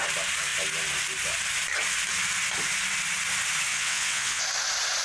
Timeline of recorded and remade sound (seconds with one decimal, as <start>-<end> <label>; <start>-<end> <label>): 0.0-3.7 recorded; 3.7-4.4 remade; 4.4-5.0 recorded